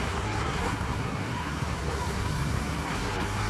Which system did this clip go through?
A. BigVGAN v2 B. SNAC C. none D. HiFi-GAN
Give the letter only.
B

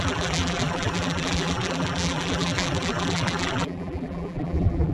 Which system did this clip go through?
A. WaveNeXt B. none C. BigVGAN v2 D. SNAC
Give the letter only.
C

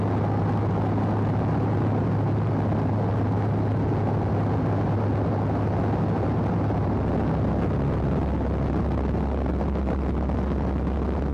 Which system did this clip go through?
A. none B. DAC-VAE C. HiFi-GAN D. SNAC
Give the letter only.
A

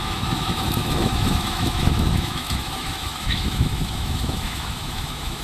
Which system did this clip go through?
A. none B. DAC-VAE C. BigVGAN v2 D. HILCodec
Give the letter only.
B